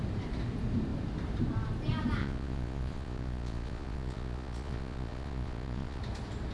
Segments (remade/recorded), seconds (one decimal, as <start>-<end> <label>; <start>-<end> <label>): 0.0-2.2 recorded; 2.2-6.0 remade; 6.0-6.5 recorded